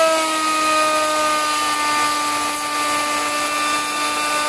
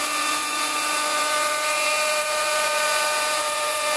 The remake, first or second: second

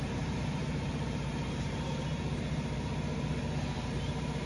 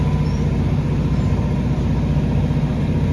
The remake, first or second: first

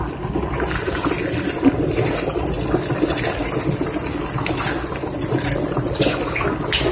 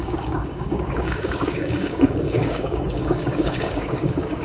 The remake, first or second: second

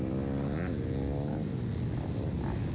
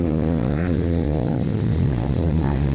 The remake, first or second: second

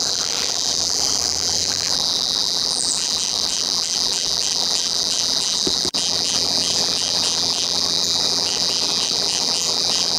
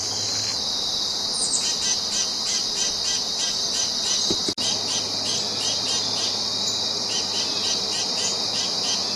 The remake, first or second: first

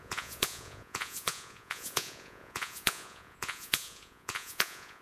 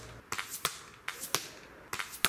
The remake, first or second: first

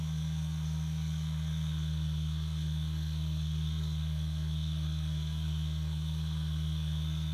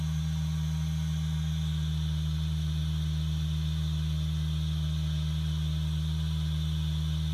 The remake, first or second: first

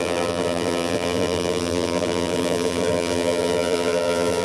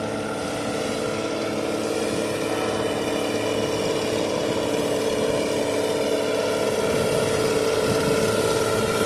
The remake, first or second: first